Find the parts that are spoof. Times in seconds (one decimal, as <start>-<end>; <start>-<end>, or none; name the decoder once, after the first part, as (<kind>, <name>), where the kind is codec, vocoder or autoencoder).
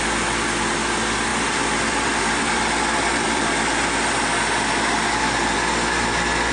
1.3-3.5 (vocoder, BigVGAN v2)